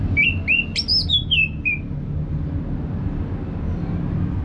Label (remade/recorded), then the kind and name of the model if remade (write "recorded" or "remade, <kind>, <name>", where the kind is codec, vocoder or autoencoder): recorded